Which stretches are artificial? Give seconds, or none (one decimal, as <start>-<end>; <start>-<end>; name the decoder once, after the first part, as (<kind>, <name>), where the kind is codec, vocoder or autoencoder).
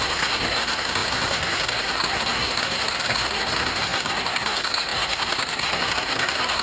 0.0-6.6 (codec, SNAC)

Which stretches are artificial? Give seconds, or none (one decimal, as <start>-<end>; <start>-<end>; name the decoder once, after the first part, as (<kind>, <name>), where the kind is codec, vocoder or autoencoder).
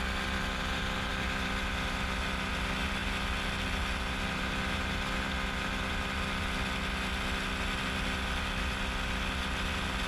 none